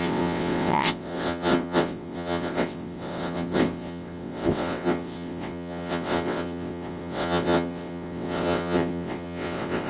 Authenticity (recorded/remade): remade